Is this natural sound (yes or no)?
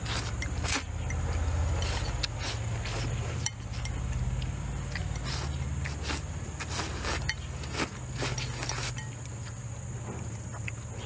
yes